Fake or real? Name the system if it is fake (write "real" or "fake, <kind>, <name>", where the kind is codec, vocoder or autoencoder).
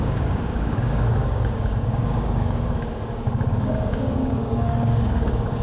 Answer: fake, codec, DAC